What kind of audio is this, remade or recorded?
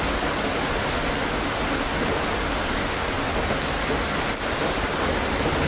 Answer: recorded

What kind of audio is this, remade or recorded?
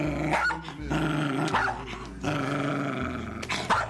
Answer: recorded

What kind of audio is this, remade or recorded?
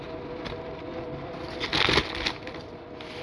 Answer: recorded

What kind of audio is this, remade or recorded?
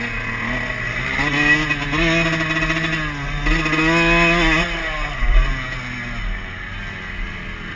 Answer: recorded